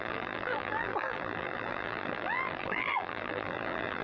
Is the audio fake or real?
fake